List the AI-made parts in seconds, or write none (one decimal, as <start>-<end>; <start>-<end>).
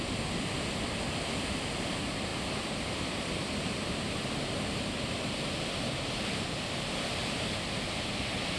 none